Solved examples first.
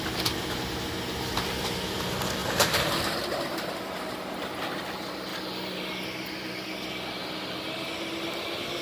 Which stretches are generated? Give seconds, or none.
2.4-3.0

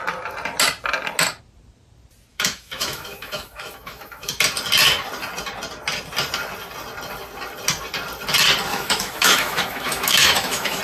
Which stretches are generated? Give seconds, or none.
2.3-4.3; 8.7-10.8